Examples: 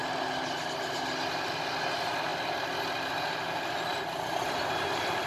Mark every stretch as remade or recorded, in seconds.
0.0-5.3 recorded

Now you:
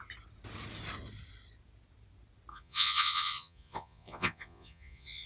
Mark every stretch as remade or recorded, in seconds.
0.0-2.5 recorded; 2.5-5.3 remade

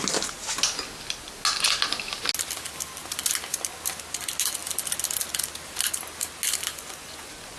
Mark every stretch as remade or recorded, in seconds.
0.0-6.7 recorded; 6.7-7.6 remade

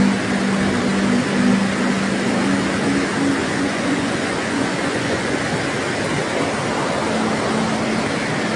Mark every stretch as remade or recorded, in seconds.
0.0-3.4 recorded; 3.4-5.4 remade; 5.4-8.6 recorded

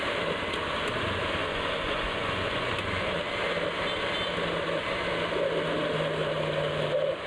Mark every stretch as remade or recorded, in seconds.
0.0-1.4 recorded; 1.4-3.2 remade; 3.2-7.3 recorded

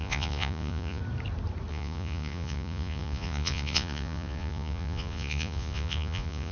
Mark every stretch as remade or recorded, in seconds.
0.0-1.0 remade; 1.0-1.7 recorded; 1.7-6.5 remade

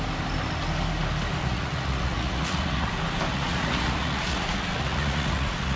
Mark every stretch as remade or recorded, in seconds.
0.0-1.4 recorded; 1.4-2.9 remade; 2.9-3.3 recorded; 3.3-5.8 remade

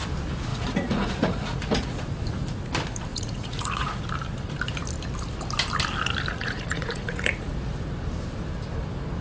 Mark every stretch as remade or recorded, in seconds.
0.0-0.5 recorded; 0.5-2.0 remade; 2.0-3.1 recorded; 3.1-4.0 remade; 4.0-6.3 recorded; 6.3-7.5 remade; 7.5-9.2 recorded